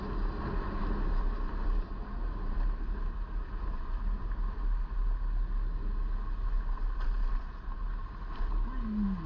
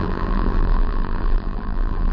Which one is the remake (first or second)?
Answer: second